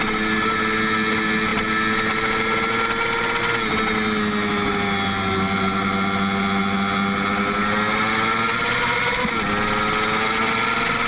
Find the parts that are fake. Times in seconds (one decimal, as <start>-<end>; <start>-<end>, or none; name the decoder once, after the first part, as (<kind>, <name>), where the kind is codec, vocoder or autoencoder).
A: none